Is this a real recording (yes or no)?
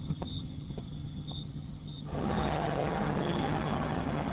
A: no